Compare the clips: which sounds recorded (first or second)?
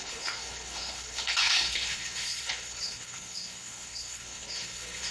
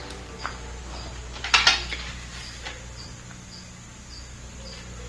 second